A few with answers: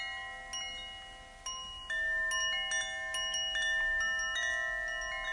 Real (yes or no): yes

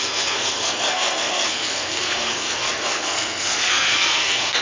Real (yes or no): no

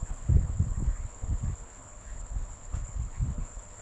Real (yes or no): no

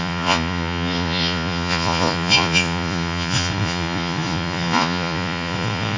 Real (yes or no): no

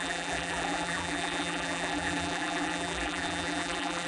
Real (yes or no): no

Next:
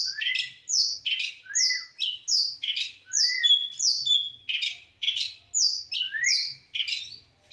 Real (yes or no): yes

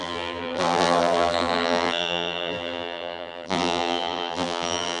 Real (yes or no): no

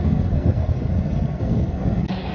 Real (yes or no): no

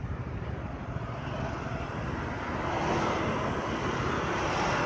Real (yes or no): yes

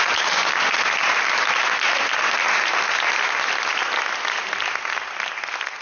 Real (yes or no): yes